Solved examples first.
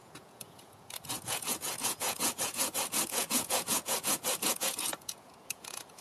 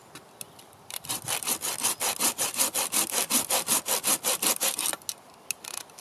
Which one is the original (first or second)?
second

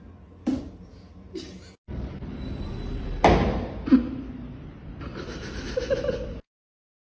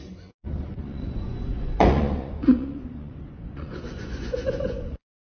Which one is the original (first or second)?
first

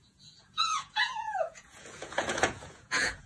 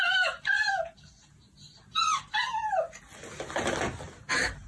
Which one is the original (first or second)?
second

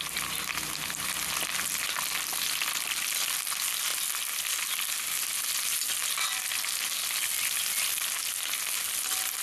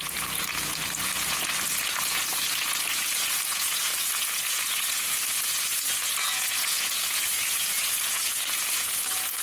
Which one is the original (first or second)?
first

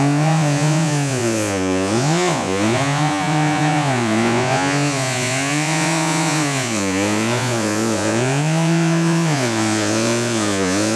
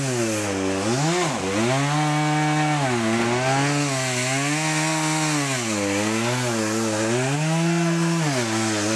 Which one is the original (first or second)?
second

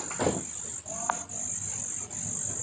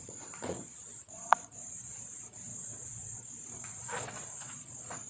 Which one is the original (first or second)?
first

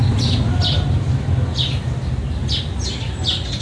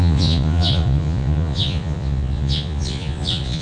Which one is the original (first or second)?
first